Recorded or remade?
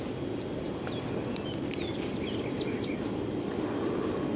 recorded